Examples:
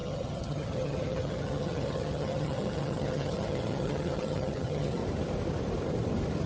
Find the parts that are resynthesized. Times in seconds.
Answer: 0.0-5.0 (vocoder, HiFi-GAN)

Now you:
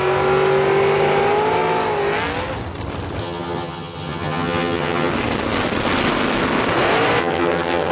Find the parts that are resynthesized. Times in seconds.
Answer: 3.2-5.1 (vocoder, HiFi-GAN); 7.2-7.9

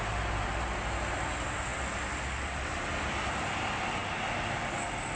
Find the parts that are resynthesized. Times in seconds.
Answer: none